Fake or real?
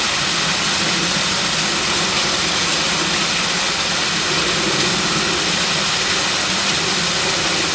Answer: real